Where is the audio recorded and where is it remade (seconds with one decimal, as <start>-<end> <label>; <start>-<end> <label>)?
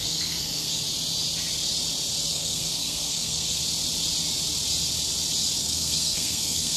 0.0-0.7 remade; 0.7-2.3 recorded; 2.3-3.6 remade; 3.6-5.6 recorded; 5.6-6.8 remade